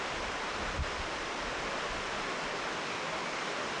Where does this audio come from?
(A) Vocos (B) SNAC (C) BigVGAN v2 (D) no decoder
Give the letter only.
D